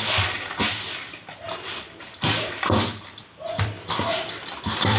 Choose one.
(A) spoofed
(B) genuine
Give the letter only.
B